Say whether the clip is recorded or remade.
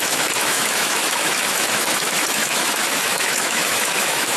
remade